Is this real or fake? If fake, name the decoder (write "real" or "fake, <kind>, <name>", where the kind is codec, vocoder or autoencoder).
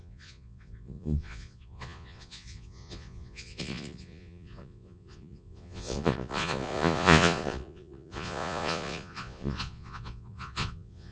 fake, vocoder, Vocos